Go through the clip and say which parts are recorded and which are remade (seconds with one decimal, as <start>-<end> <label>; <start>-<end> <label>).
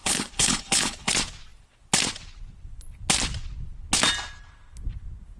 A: 0.0-1.1 remade; 1.1-5.4 recorded